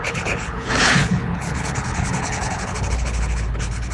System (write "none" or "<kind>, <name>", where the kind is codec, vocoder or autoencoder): codec, HILCodec